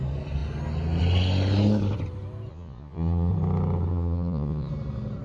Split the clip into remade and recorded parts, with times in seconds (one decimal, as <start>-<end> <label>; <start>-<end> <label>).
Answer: 0.0-2.5 recorded; 2.5-3.3 remade; 3.3-3.9 recorded; 3.9-4.7 remade; 4.7-5.2 recorded